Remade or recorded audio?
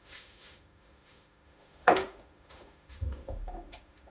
remade